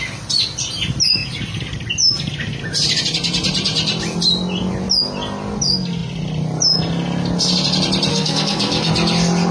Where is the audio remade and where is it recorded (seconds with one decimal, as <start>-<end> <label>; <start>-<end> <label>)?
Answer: 0.0-8.1 recorded; 8.1-8.9 remade; 8.9-9.5 recorded